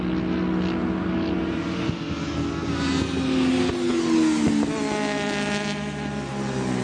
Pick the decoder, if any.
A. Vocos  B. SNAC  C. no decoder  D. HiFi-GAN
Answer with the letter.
C